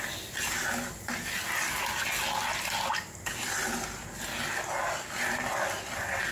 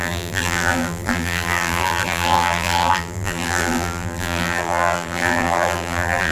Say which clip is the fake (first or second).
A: second